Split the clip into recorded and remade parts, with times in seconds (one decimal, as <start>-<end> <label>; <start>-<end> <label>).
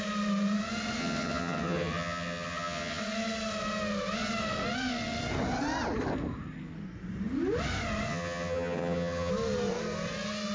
0.0-1.0 recorded; 1.0-3.0 remade; 3.0-8.1 recorded; 8.1-9.3 remade; 9.3-10.5 recorded